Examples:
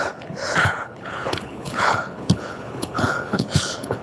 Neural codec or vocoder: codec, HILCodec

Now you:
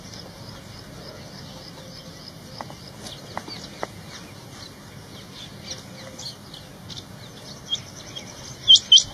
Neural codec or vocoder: none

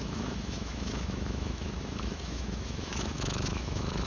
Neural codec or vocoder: autoencoder, DAC-VAE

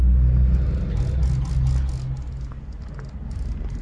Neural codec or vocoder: none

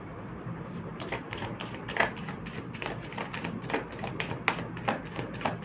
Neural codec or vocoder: none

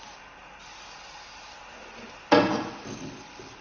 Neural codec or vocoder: none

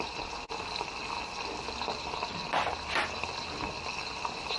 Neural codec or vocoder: none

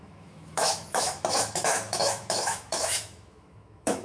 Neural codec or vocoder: autoencoder, DAC-VAE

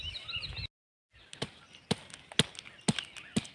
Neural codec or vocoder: none